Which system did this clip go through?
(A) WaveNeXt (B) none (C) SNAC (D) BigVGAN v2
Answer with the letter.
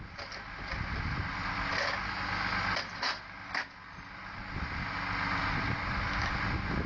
B